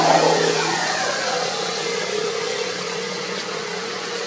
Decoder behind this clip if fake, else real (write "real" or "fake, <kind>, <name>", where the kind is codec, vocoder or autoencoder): fake, vocoder, Vocos